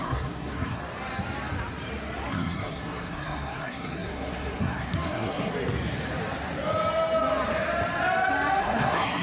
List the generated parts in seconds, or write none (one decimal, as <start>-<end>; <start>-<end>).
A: 0.0-0.8; 2.3-5.5; 8.6-9.2